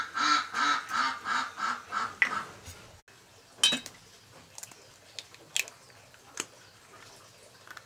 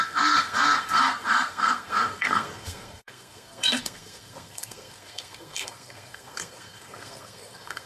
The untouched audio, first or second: first